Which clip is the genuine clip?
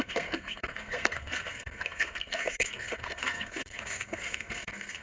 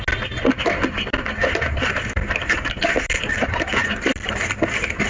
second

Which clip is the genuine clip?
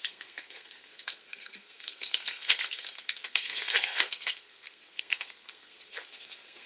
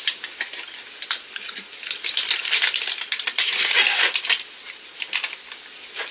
second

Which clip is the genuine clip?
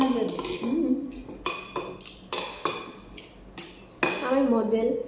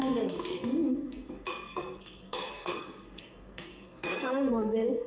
first